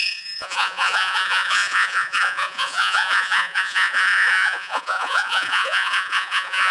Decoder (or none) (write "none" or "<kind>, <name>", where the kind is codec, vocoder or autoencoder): vocoder, Vocos